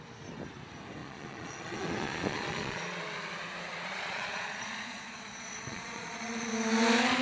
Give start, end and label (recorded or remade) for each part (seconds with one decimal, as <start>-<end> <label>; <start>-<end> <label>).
0.0-1.0 recorded; 1.0-3.0 remade; 3.0-3.7 recorded; 3.7-6.5 remade; 6.5-7.2 recorded